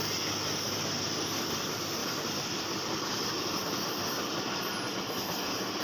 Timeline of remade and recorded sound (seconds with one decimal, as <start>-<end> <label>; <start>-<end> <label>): 0.0-2.0 recorded; 2.0-4.4 remade; 4.4-5.8 recorded